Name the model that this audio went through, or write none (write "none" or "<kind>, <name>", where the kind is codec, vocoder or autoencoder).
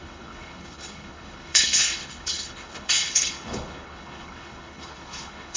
codec, HILCodec